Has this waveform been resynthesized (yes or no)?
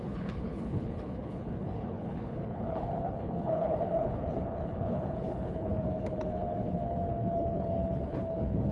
yes